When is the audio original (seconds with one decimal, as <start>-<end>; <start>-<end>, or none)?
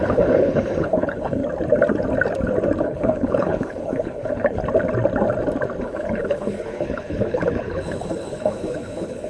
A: 1.4-2.8; 4.6-5.8